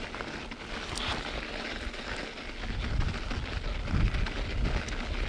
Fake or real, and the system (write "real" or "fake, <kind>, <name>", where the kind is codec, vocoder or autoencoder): real